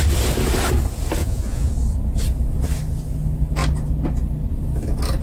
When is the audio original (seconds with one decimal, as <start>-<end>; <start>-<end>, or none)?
0.0-1.2; 1.7-5.2